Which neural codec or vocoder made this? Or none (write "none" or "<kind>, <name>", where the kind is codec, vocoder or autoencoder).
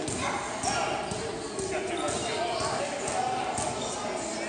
none